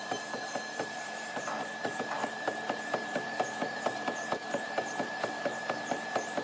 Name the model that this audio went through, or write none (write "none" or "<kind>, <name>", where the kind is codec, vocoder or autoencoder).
vocoder, BigVGAN v2